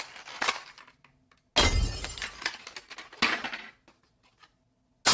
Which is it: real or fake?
real